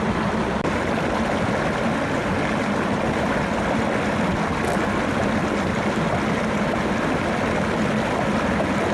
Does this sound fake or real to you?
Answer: real